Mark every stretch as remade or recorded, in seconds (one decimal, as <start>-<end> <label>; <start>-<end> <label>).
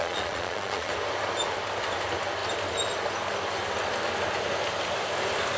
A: 0.0-0.9 remade; 0.9-5.6 recorded